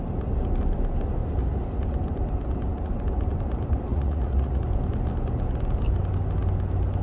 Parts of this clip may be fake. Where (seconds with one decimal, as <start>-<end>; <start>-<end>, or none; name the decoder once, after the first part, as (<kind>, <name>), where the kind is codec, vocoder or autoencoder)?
3.9-4.6 (vocoder, Vocos)